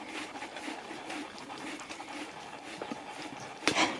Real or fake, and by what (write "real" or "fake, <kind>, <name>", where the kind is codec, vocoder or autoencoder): real